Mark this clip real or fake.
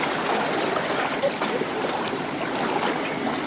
real